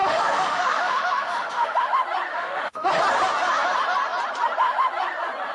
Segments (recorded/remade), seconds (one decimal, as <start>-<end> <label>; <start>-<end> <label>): 0.0-1.8 remade; 1.8-2.3 recorded; 2.3-2.9 remade; 2.9-5.5 recorded